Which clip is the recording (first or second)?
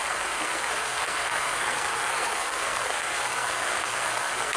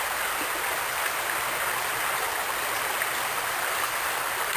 second